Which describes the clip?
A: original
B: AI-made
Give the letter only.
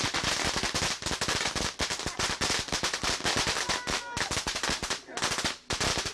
A